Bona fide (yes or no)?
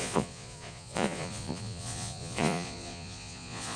no